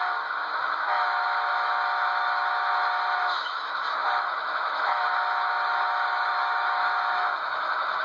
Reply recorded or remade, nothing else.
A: remade